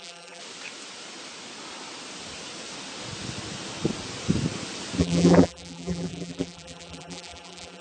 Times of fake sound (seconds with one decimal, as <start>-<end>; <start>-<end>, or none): 0.0-0.4; 5.0-7.8